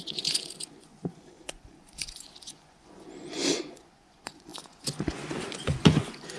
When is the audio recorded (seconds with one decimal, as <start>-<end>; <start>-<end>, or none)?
none